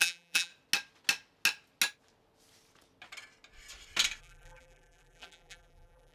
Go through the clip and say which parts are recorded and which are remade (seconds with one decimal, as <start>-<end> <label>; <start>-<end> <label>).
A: 0.0-0.5 remade; 0.5-4.2 recorded; 4.2-6.1 remade